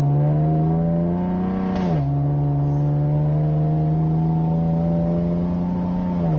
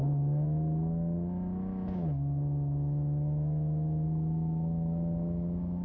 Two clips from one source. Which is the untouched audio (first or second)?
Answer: first